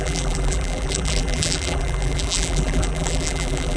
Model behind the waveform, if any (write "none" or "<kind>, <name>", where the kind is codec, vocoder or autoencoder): vocoder, BigVGAN v2